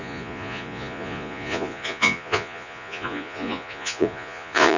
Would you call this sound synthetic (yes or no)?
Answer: yes